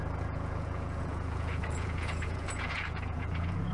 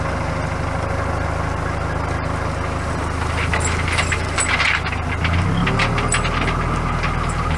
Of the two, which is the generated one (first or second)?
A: first